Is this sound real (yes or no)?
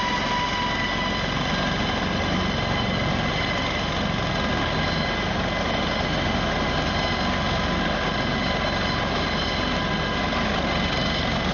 yes